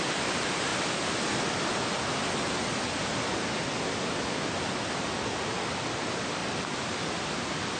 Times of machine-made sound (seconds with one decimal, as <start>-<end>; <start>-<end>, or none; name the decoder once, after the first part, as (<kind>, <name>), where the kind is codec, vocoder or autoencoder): 0.0-0.7 (vocoder, BigVGAN v2); 5.0-6.4; 7.3-7.8